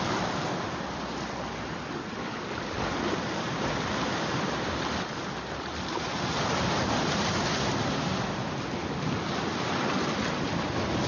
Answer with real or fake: real